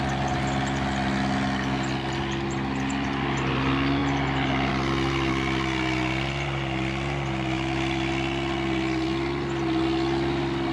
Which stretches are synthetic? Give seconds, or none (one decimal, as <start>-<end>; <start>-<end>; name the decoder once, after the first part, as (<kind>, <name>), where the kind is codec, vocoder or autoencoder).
none